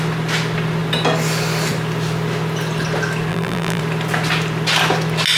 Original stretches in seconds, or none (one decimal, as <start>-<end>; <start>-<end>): 0.0-3.3; 3.8-5.4